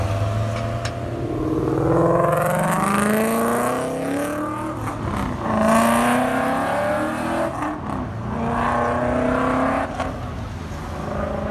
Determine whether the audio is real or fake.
real